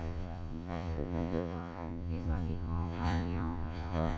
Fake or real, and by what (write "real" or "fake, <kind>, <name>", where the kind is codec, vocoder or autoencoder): fake, vocoder, Vocos